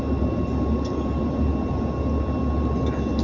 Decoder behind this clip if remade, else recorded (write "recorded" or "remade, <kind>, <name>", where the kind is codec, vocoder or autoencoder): recorded